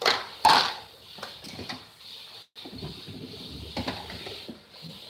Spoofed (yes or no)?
no